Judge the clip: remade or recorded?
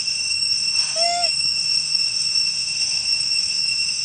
remade